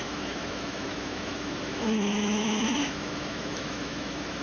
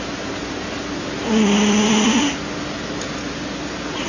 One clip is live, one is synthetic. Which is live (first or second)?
second